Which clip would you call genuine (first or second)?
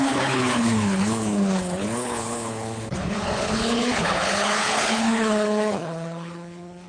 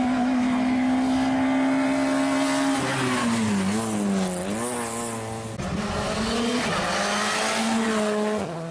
second